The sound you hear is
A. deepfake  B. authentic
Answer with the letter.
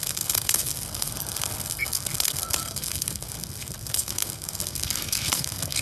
A